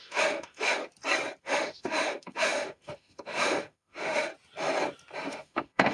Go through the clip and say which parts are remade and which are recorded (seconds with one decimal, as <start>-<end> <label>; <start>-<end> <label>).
0.0-0.8 remade; 0.8-1.4 recorded; 1.4-4.3 remade; 4.3-5.3 recorded; 5.3-5.9 remade